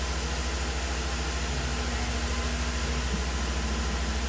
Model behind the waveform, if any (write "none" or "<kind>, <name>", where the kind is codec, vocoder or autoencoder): none